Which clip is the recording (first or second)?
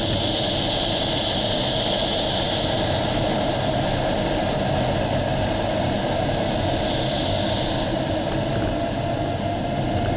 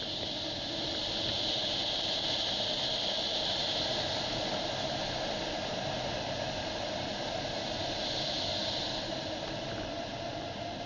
first